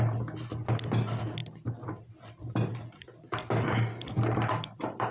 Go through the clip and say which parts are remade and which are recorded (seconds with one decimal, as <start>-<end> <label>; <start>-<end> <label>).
0.0-5.1 recorded